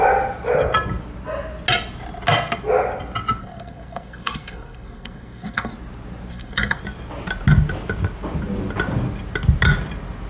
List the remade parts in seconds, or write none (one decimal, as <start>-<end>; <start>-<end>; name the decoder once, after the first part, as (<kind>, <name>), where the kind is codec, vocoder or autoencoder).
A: 3.4-5.7 (codec, SNAC); 6.3-6.8